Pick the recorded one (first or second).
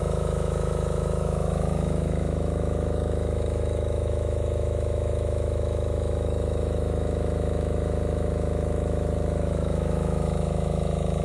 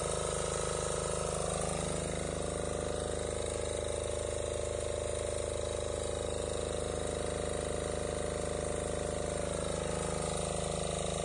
second